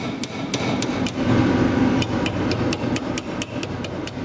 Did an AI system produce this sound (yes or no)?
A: no